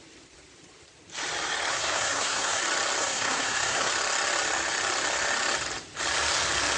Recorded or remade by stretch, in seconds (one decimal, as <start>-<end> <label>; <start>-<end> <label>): 0.0-1.7 recorded; 1.7-2.6 remade; 2.6-3.0 recorded; 3.0-3.9 remade; 3.9-6.8 recorded